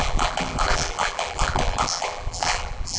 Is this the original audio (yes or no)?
no